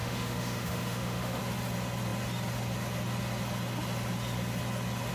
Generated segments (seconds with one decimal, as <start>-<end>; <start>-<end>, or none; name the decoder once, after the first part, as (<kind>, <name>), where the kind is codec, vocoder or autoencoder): 0.0-1.4 (autoencoder, DAC-VAE)